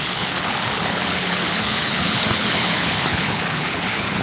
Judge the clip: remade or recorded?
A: remade